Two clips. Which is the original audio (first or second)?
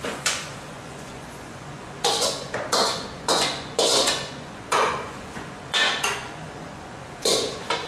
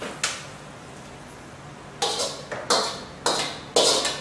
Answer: second